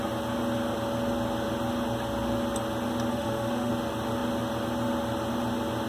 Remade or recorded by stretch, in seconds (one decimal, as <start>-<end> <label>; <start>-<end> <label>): 0.0-3.1 recorded; 3.1-3.7 remade; 3.7-5.9 recorded